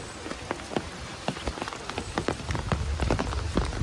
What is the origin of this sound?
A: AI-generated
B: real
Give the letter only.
B